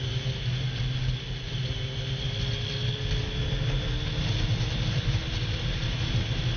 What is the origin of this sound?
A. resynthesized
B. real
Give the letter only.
B